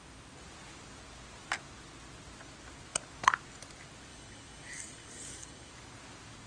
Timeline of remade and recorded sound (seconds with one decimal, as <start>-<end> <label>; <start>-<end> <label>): 0.0-4.1 recorded; 4.1-5.7 remade; 5.7-6.5 recorded